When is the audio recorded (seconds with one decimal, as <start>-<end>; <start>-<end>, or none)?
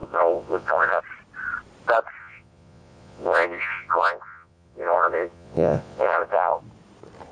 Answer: 1.0-2.2; 6.6-7.3